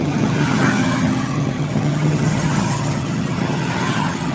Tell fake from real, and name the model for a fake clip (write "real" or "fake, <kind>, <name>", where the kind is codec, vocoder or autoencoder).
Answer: fake, vocoder, HiFi-GAN